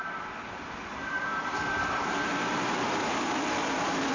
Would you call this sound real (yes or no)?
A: yes